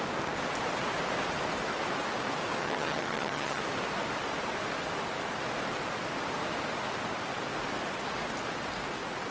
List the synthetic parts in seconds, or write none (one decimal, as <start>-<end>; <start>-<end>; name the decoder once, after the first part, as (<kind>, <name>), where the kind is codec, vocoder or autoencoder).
2.6-3.6 (vocoder, HiFi-GAN)